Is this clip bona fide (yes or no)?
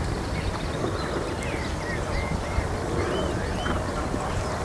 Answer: yes